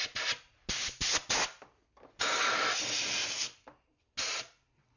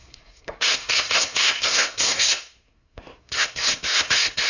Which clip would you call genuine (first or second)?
first